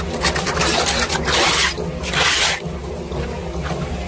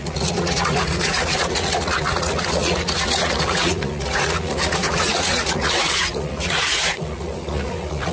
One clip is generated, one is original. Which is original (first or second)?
first